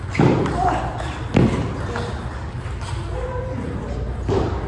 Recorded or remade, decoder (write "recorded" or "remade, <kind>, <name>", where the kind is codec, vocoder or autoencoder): recorded